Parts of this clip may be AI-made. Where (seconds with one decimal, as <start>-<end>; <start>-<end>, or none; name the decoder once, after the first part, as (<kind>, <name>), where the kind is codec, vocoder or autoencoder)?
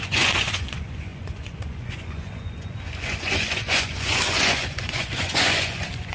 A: 0.0-6.1 (vocoder, Vocos)